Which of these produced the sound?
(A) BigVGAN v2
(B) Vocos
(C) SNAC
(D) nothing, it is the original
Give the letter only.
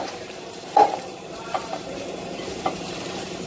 A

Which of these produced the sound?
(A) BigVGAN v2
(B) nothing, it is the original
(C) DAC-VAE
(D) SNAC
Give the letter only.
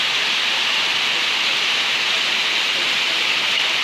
A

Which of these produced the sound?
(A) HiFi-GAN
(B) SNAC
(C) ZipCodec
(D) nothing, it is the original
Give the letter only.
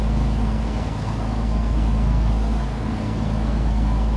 B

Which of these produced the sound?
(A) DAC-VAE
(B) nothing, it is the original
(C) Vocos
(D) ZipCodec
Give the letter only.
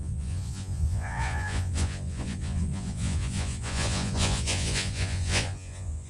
C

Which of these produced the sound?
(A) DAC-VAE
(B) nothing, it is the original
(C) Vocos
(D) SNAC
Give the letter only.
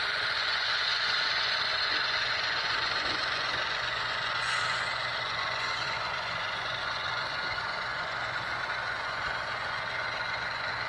C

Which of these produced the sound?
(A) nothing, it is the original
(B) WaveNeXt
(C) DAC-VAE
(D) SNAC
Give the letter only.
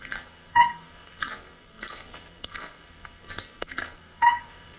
D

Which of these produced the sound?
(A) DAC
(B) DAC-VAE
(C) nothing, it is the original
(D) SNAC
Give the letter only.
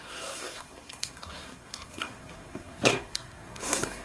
D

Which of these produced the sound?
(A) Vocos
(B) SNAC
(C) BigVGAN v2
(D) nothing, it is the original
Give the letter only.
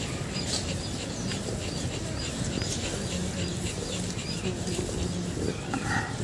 D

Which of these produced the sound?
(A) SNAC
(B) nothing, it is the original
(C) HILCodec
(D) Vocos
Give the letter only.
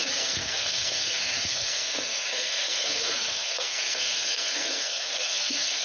A